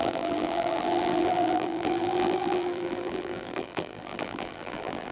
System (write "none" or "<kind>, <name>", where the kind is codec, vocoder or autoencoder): vocoder, BigVGAN v2